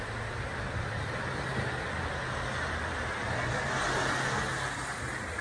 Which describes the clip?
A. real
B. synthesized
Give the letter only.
A